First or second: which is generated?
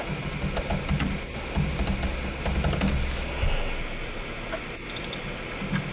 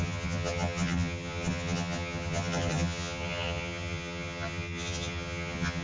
second